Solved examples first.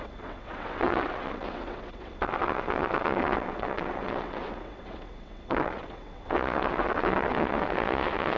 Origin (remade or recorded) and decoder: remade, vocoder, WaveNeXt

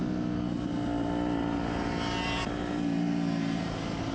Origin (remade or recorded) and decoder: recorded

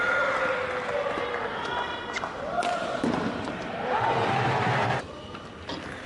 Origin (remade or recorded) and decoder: recorded